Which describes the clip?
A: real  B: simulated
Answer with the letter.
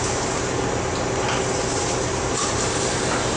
A